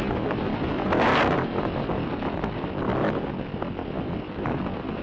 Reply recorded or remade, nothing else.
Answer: recorded